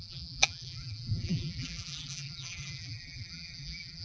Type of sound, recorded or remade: remade